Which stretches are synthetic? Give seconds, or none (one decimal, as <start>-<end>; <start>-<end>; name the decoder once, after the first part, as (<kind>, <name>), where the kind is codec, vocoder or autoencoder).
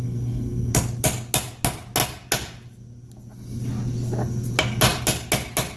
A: 0.0-0.7 (codec, SNAC)